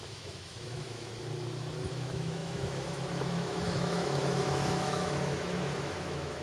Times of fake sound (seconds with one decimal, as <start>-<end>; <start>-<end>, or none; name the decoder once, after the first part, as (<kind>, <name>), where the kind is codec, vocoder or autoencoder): 0.0-1.1 (autoencoder, DAC-VAE); 1.9-6.4